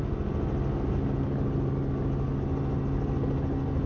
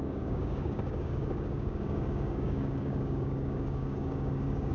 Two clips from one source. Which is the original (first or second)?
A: first